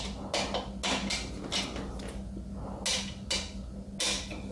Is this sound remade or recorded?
recorded